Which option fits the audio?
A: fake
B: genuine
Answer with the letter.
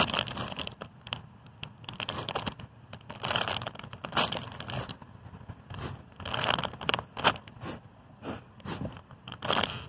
A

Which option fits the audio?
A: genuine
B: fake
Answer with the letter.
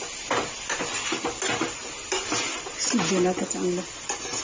A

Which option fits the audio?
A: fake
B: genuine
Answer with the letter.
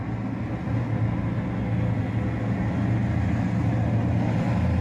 B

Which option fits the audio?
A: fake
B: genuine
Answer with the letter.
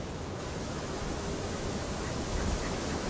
A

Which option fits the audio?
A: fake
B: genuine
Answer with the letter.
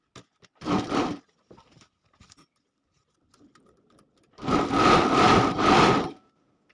B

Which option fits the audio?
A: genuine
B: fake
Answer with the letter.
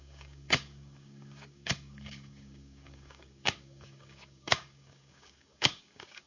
B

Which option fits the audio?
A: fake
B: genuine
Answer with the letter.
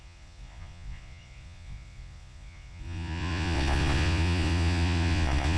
A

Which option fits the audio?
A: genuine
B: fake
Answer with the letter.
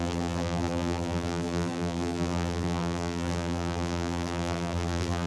B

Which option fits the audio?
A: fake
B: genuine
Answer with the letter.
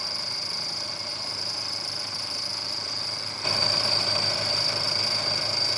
B